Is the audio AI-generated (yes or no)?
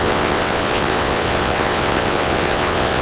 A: yes